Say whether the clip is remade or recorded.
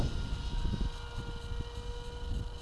recorded